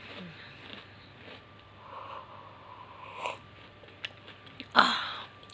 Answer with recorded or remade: recorded